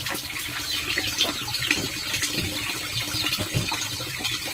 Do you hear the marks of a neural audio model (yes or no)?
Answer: no